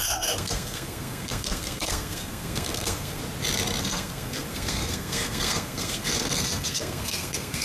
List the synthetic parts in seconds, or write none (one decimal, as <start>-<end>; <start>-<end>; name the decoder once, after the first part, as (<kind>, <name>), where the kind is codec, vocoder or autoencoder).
0.0-3.2 (codec, SNAC); 3.8-7.6